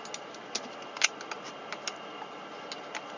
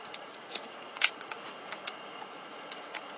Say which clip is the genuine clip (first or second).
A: first